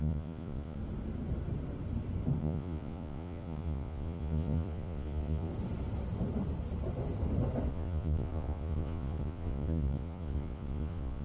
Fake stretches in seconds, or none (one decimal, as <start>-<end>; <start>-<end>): 0.0-0.8; 2.4-5.5; 7.7-11.2